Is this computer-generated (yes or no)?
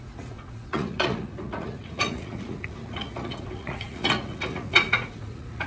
yes